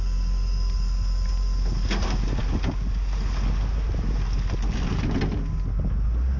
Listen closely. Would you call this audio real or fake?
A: real